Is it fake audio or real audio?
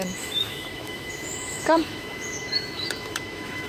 fake